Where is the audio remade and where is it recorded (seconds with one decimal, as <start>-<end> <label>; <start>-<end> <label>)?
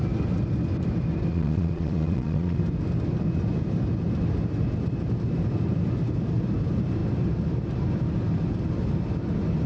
0.0-1.3 recorded; 1.3-2.6 remade; 2.6-9.7 recorded